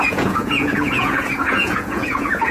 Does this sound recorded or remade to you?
remade